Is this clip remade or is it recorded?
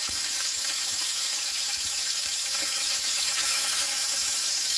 remade